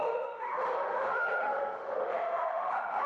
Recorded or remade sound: remade